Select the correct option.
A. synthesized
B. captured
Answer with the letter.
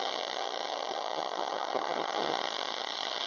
A